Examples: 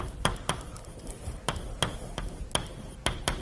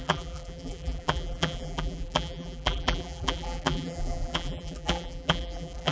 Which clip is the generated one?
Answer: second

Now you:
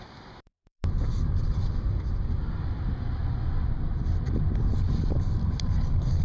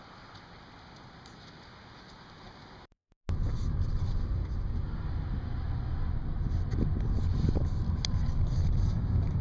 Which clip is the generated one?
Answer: first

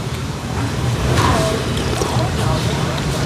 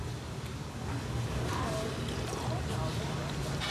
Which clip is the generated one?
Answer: first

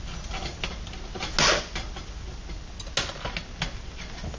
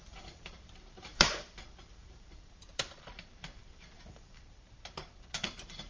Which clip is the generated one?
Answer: second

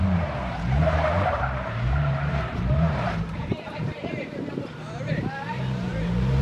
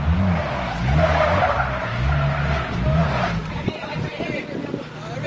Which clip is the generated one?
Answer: first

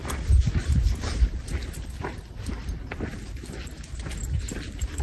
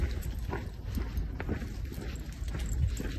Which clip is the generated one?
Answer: first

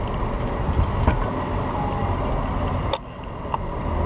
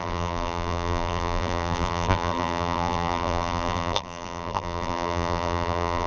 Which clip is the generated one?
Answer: second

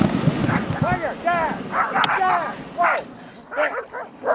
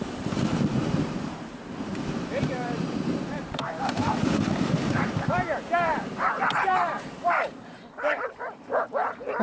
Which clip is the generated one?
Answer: second